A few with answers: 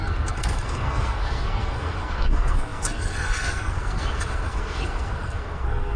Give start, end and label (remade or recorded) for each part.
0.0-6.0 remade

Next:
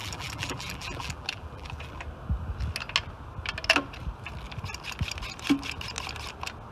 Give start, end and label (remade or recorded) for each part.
0.0-1.8 remade; 1.8-6.7 recorded

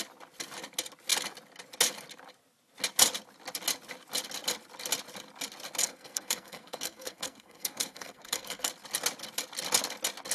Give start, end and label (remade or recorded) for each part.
0.0-5.8 recorded; 5.8-8.7 remade; 8.7-10.3 recorded

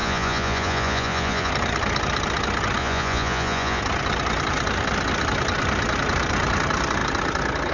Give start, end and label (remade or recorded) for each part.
0.0-1.5 remade; 1.5-2.8 recorded; 2.8-3.8 remade; 3.8-7.7 recorded

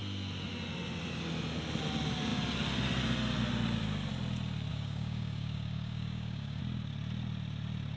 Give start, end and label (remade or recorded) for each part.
0.0-4.7 recorded; 4.7-6.6 remade; 6.6-8.0 recorded

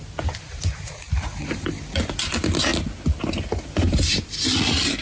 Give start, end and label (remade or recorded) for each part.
0.0-4.1 recorded; 4.1-5.0 remade